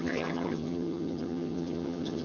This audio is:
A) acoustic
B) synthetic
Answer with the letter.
B